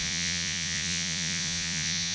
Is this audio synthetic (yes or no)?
yes